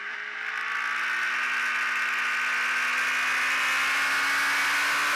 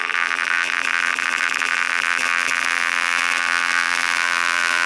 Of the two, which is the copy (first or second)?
second